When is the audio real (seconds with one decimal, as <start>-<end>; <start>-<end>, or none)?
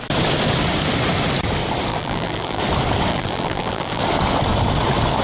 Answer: 0.0-1.9; 2.6-3.1; 4.0-5.2